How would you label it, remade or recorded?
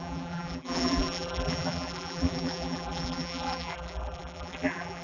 remade